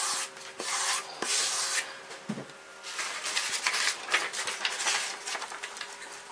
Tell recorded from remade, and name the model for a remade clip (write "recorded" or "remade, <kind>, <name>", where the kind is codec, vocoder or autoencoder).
recorded